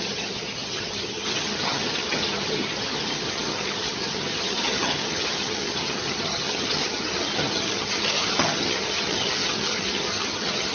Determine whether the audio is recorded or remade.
remade